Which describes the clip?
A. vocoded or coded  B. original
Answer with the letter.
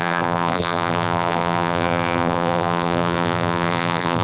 A